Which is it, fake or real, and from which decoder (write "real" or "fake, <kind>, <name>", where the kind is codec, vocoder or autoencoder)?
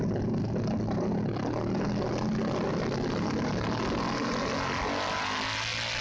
real